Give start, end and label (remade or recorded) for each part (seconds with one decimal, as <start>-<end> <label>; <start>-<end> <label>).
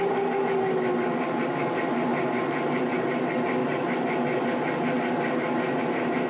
0.0-6.3 recorded